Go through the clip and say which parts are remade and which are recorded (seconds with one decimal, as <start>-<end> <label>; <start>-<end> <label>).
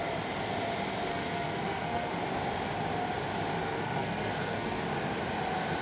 0.0-1.1 recorded; 1.1-2.1 remade; 2.1-3.6 recorded; 3.6-4.8 remade; 4.8-5.8 recorded